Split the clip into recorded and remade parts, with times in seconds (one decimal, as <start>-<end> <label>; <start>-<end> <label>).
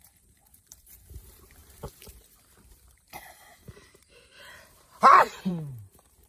0.0-6.3 remade